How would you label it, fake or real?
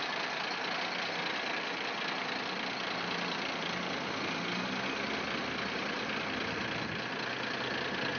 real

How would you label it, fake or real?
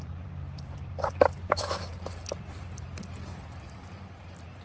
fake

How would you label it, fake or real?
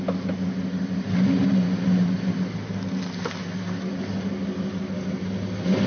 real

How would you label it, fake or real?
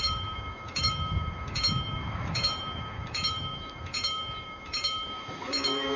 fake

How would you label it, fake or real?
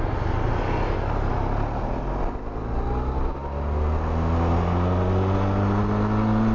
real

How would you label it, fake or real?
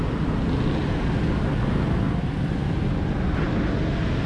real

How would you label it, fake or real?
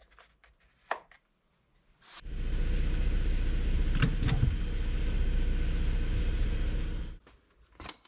real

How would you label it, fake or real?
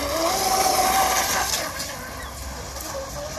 real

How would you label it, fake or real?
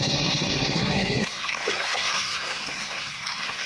fake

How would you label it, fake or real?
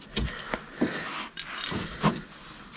real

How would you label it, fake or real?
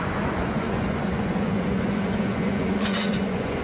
fake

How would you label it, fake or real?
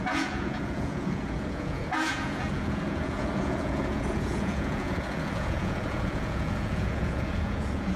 fake